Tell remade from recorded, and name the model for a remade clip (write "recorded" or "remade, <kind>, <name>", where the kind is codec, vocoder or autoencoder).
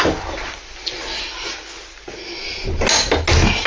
recorded